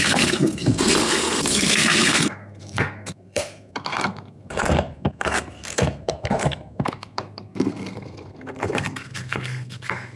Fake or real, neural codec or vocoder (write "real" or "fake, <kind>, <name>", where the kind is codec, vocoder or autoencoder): fake, codec, SNAC